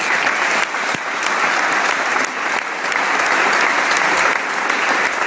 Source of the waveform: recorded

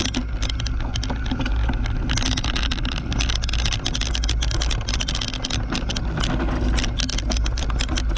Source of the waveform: recorded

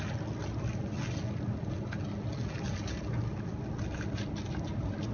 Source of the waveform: recorded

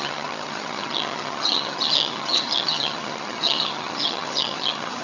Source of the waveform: remade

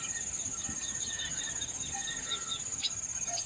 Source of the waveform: remade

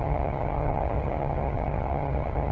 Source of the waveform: remade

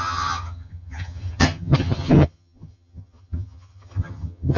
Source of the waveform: remade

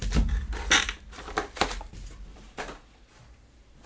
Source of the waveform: recorded